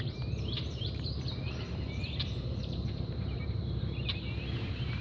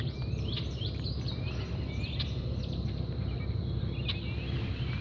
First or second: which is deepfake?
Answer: first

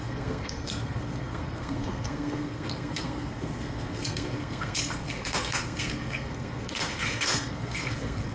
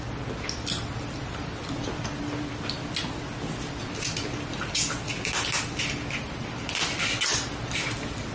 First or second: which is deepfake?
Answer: first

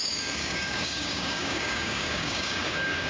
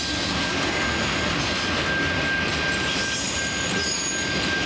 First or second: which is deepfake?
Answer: first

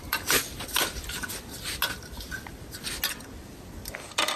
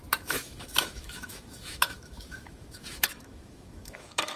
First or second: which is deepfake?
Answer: second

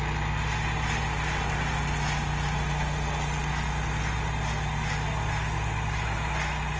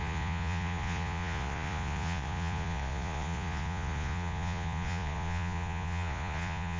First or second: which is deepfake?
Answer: second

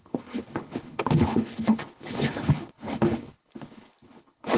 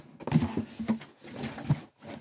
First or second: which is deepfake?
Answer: first